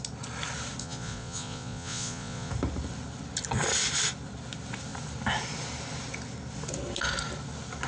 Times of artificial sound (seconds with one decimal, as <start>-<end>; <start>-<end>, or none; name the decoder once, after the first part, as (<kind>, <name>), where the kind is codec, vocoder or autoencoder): 0.8-2.5 (vocoder, Vocos)